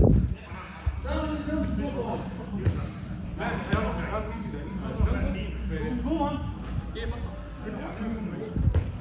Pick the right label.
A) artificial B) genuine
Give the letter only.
B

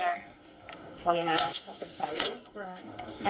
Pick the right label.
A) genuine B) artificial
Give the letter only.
B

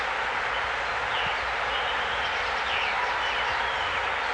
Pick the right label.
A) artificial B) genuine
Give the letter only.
B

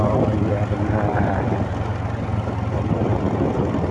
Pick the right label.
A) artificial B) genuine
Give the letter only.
B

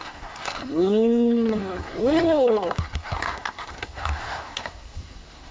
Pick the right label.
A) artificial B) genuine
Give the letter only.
A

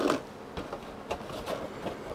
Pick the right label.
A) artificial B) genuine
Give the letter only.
B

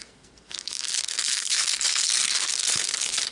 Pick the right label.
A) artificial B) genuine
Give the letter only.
A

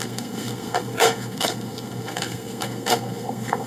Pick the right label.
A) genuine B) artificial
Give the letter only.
B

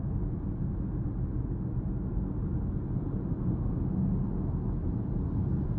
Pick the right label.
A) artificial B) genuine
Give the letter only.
B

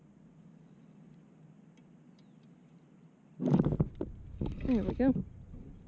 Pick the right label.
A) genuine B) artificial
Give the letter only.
A